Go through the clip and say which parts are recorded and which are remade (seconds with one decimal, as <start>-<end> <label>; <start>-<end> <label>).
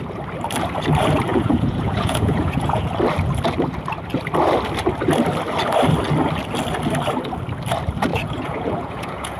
0.0-1.3 recorded; 1.3-2.9 remade; 2.9-8.1 recorded; 8.1-9.4 remade